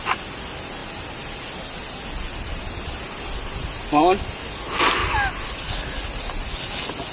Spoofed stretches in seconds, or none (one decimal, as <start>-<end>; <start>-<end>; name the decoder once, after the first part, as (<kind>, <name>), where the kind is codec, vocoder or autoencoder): none